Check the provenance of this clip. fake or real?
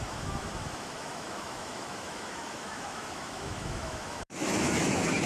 fake